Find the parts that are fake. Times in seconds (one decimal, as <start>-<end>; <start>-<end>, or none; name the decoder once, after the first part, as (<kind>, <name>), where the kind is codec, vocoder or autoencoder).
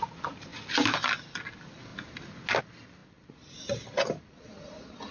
none